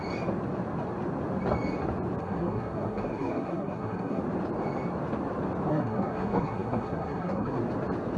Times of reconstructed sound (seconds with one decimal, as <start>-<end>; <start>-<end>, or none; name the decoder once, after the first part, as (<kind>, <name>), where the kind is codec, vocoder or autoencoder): 2.2-4.2 (codec, SNAC); 5.7-7.6